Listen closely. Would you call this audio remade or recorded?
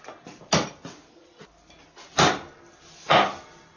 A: recorded